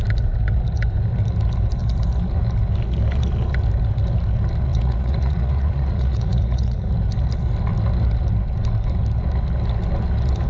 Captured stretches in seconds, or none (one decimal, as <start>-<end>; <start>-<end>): 0.0-4.7; 6.9-10.5

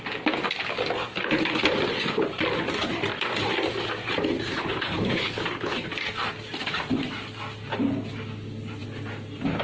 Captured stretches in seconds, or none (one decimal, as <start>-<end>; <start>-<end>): 0.0-4.5; 5.9-9.6

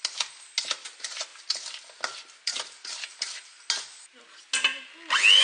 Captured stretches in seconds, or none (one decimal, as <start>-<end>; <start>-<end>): 0.0-5.4

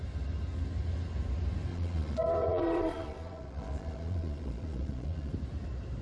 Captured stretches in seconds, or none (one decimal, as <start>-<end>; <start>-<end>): 0.0-1.7; 5.3-6.0

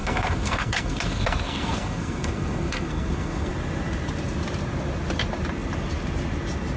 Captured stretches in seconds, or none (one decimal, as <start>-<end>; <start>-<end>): 3.5-6.8